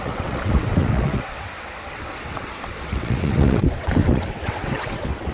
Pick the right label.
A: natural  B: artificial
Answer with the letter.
B